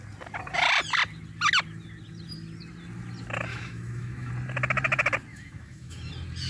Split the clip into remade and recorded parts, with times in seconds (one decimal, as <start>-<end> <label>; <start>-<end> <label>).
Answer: 0.0-3.5 recorded; 3.5-4.3 remade; 4.3-5.3 recorded; 5.3-6.1 remade; 6.1-6.5 recorded